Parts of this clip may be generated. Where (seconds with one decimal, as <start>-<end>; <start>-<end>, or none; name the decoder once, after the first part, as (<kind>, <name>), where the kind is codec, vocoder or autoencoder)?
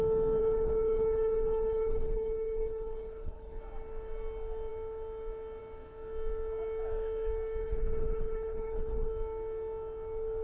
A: 0.4-3.6 (codec, HILCodec); 7.6-9.1